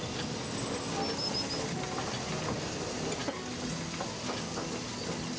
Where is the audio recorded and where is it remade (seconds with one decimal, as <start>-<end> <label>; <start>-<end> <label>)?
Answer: 0.0-5.4 recorded